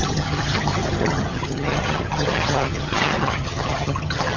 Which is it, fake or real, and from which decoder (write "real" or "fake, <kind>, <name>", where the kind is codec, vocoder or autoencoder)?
fake, vocoder, HiFi-GAN